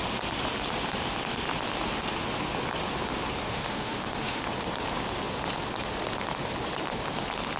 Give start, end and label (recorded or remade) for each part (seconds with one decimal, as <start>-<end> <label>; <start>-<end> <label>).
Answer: 0.0-3.5 recorded; 3.5-4.4 remade; 4.4-7.6 recorded